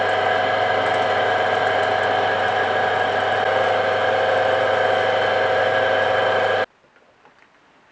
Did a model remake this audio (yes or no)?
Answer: no